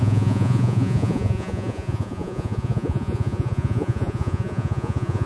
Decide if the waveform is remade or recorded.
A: remade